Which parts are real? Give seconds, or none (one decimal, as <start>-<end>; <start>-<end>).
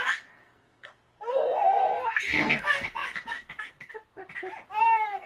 4.2-4.8